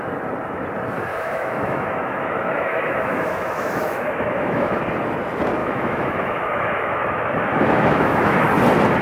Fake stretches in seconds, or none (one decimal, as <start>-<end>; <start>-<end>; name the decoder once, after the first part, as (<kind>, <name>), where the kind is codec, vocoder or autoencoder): 1.1-4.8 (autoencoder, DAC-VAE); 5.6-7.0; 7.5-8.5